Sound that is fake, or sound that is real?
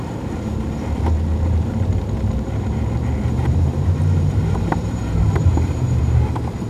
fake